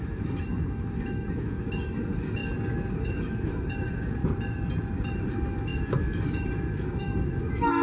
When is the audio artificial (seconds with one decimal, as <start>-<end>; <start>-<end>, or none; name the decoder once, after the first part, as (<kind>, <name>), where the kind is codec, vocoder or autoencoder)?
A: 0.0-2.4 (autoencoder, DAC-VAE); 2.9-4.2; 5.1-7.8

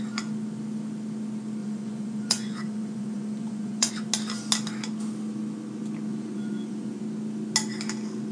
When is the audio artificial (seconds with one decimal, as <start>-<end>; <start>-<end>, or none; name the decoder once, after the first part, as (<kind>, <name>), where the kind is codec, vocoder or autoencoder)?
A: 1.6-3.9 (vocoder, Vocos); 6.1-7.0

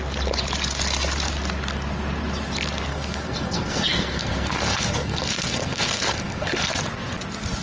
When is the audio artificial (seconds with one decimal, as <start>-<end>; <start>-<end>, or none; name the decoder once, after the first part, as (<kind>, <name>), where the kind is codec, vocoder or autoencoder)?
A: 2.9-6.8 (codec, SNAC)

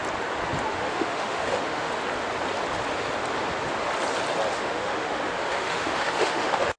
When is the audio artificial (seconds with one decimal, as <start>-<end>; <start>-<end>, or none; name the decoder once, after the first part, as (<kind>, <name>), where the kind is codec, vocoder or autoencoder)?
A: 0.7-1.9 (autoencoder, DAC-VAE); 4.5-6.8

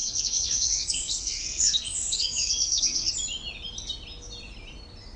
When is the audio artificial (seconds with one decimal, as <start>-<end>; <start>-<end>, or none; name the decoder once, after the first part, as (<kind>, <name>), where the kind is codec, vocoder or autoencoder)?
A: 0.0-3.1 (codec, SNAC)